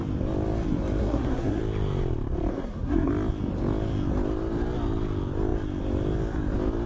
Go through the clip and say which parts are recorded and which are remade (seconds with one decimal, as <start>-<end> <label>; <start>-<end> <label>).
0.0-1.0 recorded; 1.0-1.6 remade; 1.6-2.5 recorded; 2.5-3.1 remade; 3.1-6.9 recorded